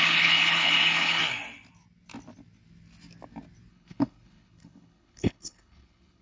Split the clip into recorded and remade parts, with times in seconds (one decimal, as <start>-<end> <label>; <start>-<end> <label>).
0.0-1.2 remade; 1.2-3.7 recorded; 3.7-6.2 remade